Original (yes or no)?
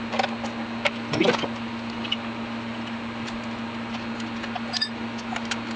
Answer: yes